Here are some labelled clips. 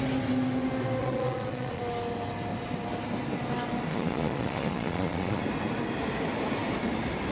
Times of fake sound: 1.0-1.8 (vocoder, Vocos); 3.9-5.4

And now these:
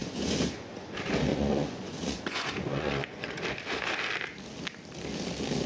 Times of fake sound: 0.0-0.9 (vocoder, Vocos); 1.3-3.4

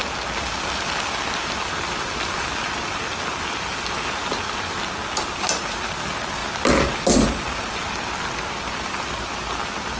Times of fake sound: none

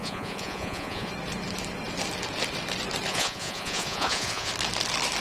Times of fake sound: 0.0-1.1 (vocoder, Vocos); 3.1-4.5

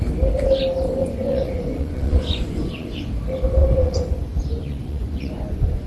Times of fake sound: 1.0-3.1 (vocoder, Vocos); 3.6-5.9